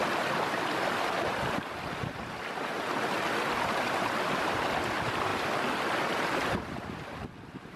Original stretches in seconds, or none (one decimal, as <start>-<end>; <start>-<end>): 0.0-7.8